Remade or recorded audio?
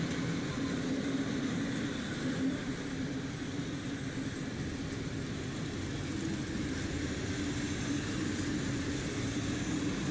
recorded